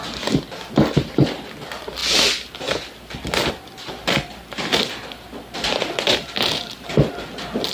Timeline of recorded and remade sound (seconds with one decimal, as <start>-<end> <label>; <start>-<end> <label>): 0.0-7.7 recorded